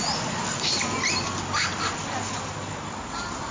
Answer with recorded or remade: recorded